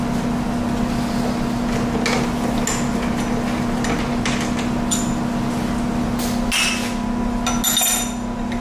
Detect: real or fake real